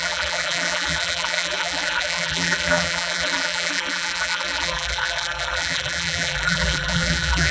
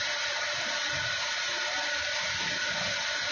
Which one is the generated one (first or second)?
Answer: first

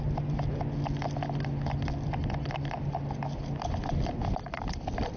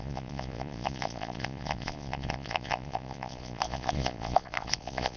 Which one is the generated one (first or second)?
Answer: second